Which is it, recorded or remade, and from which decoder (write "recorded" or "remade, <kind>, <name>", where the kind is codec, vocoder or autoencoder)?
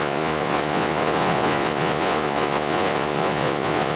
remade, vocoder, Vocos